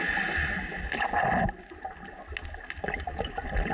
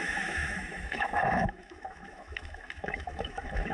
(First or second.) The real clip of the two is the first